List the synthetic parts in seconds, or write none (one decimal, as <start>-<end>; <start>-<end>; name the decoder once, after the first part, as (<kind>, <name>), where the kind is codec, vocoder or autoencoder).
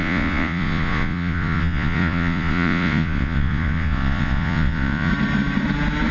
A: 0.0-5.1 (vocoder, Vocos)